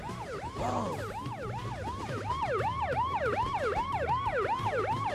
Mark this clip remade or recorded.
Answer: remade